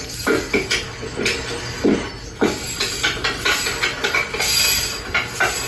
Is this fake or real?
real